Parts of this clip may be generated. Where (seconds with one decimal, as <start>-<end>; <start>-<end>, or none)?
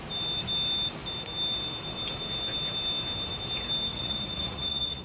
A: 3.9-5.0